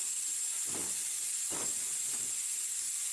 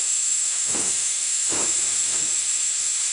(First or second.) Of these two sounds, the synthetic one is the second